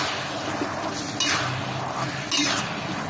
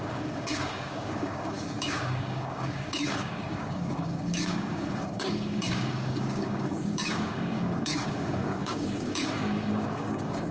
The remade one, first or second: second